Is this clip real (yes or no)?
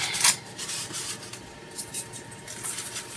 no